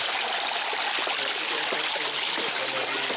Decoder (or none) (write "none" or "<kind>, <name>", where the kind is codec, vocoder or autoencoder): none